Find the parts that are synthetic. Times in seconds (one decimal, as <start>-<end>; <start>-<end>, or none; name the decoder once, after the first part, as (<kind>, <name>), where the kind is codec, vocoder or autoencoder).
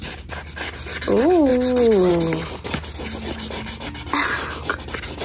none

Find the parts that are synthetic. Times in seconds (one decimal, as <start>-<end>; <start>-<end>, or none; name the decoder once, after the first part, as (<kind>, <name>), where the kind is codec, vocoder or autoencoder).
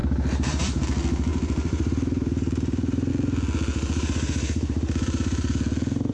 0.0-0.8 (vocoder, BigVGAN v2); 1.3-3.1; 3.7-5.5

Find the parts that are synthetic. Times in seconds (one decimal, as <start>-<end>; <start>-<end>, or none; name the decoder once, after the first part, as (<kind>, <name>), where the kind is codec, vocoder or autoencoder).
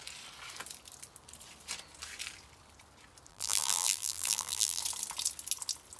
3.3-4.8 (vocoder, BigVGAN v2)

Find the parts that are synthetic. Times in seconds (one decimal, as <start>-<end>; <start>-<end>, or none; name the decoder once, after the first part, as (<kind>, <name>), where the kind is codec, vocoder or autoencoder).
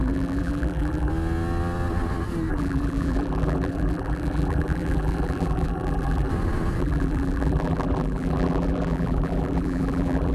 0.0-1.1 (vocoder, BigVGAN v2); 2.5-6.3; 6.8-10.3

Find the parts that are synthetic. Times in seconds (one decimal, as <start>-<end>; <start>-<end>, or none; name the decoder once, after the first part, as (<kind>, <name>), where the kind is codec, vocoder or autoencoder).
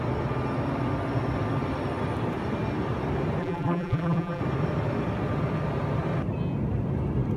3.4-4.4 (vocoder, BigVGAN v2)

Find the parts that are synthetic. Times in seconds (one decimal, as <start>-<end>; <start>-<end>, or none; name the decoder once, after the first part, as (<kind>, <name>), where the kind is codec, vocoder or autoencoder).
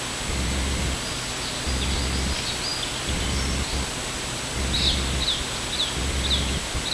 none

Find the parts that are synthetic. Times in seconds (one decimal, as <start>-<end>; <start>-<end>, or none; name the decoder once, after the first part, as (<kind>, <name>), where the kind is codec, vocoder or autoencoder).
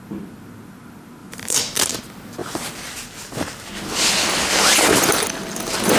1.2-2.0 (vocoder, BigVGAN v2)